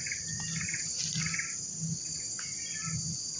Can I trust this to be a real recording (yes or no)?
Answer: yes